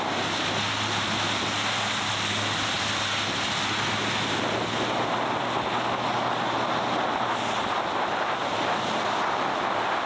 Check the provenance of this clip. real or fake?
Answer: real